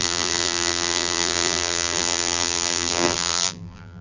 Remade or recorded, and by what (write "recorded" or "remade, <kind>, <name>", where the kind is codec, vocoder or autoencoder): remade, vocoder, BigVGAN v2